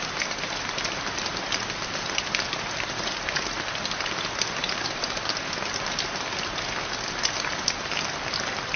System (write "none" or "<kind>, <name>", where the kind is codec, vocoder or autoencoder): none